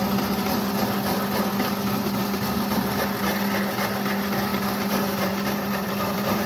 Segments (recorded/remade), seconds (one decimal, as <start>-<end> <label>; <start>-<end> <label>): 0.0-4.5 recorded; 4.5-6.5 remade